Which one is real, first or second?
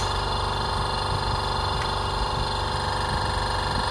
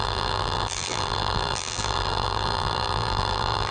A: first